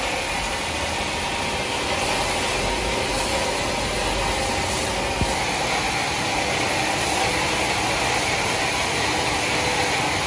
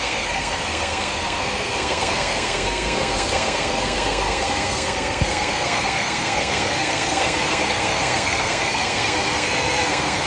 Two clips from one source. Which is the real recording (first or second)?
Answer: first